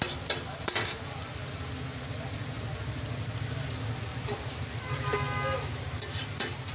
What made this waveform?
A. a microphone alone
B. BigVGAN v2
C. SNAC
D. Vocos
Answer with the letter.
A